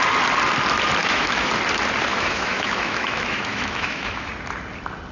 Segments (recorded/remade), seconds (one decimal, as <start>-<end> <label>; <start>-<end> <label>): 0.0-1.0 recorded; 1.0-1.5 remade; 1.5-2.1 recorded; 2.1-4.3 remade; 4.3-5.1 recorded